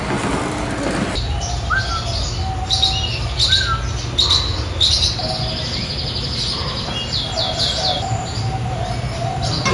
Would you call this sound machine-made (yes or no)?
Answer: no